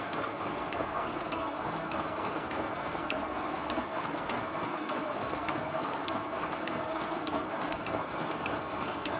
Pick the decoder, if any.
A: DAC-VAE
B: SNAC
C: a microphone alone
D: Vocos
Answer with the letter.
B